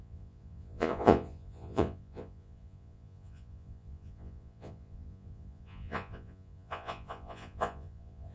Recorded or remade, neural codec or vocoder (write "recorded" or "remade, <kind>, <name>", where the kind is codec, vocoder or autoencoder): remade, vocoder, Vocos